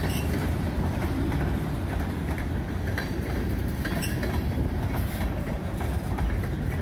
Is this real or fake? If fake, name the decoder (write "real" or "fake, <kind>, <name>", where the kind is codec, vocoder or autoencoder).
fake, vocoder, BigVGAN v2